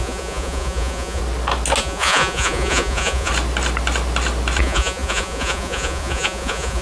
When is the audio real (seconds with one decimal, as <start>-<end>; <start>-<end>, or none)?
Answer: 1.2-1.8; 3.3-4.6